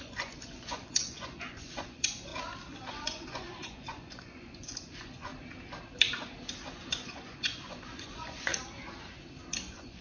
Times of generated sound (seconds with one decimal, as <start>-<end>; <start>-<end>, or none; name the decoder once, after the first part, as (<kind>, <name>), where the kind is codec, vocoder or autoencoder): 0.0-2.3 (vocoder, Vocos); 2.9-5.3; 6.6-8.5; 9.6-10.0